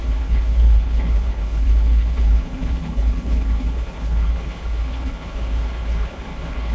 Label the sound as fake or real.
fake